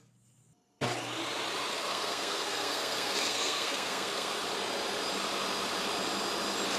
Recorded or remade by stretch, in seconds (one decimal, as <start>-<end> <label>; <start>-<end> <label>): 0.0-1.7 recorded; 1.7-4.4 remade; 4.4-6.8 recorded